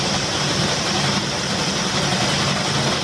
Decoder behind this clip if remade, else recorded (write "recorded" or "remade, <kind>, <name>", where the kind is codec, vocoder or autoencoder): recorded